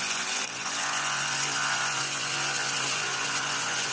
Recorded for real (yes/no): no